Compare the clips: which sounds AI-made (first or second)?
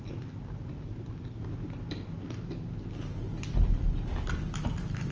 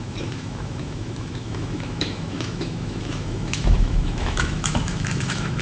second